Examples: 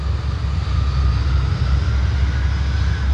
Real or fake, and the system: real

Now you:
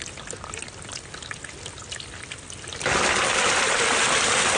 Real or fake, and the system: real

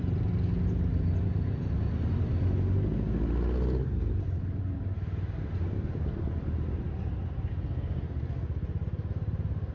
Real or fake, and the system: real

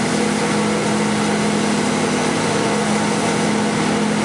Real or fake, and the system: real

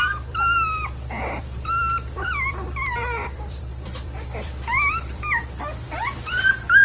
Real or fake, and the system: fake, vocoder, BigVGAN v2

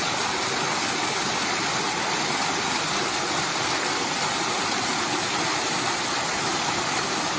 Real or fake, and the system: real